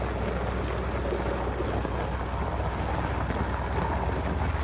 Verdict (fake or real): real